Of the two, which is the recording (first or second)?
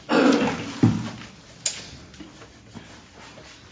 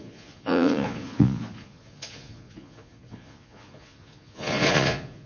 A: first